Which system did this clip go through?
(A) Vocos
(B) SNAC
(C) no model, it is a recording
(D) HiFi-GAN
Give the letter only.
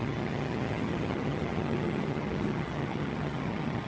D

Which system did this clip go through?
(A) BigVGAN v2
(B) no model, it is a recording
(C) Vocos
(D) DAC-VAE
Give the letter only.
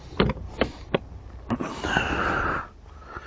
B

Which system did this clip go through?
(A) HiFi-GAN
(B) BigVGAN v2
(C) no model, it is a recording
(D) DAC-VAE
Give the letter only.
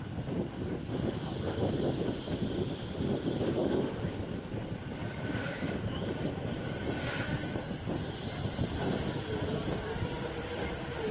B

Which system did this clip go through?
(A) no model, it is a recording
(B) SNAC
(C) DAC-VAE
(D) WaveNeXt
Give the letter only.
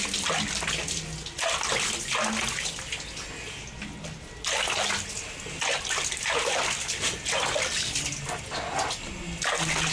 A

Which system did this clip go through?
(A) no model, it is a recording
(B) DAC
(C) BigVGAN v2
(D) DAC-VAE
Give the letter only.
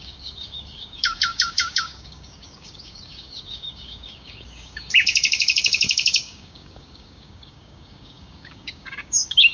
B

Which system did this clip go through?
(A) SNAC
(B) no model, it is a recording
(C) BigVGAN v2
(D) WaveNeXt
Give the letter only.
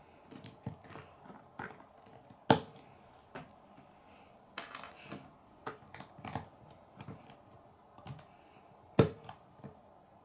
B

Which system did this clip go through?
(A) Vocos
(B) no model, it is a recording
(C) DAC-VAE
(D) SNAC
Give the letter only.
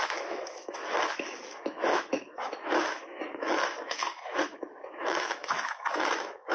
C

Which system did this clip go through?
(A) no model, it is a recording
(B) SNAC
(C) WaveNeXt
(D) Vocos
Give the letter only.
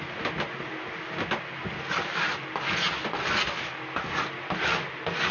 A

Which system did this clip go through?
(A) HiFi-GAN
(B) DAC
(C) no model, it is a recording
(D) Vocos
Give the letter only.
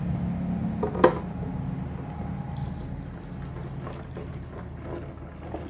C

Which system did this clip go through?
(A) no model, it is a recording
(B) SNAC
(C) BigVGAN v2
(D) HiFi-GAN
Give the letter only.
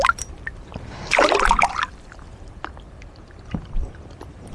C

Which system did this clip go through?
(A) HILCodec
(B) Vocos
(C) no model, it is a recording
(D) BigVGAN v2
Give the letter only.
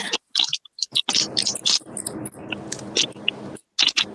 C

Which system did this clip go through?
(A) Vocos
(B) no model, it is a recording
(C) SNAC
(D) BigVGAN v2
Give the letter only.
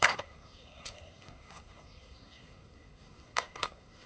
C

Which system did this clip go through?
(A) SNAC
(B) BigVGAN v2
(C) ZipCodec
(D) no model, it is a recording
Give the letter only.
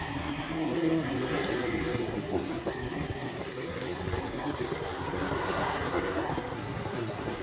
A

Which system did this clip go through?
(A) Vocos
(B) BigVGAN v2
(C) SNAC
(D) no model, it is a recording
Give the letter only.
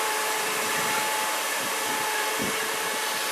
B